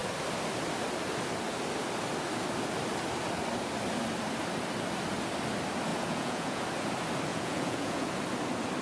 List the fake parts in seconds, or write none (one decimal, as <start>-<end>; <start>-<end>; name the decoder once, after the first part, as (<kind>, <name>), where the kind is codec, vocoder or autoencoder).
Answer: 5.9-6.6 (vocoder, Vocos); 7.3-8.1